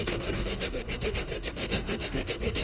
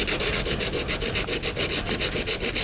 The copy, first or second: first